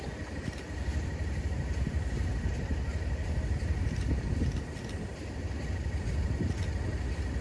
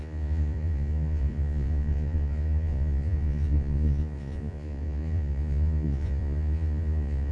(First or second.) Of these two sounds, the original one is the first